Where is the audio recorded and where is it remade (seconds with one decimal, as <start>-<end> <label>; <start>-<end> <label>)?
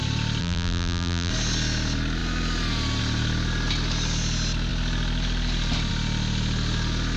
0.0-0.4 recorded; 0.4-1.3 remade; 1.3-7.2 recorded